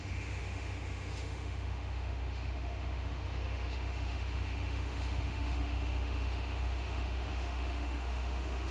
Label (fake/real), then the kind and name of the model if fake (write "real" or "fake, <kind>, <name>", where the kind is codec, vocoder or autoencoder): fake, autoencoder, DAC-VAE